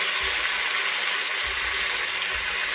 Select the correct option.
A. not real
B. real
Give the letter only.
B